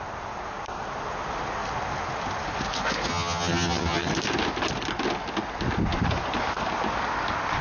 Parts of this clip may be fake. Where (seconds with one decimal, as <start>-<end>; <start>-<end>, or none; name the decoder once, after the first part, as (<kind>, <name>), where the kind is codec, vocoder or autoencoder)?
3.1-4.1 (vocoder, HiFi-GAN)